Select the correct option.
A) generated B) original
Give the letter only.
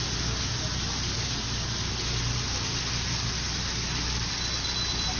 B